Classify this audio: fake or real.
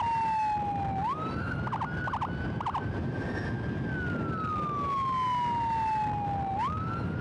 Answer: real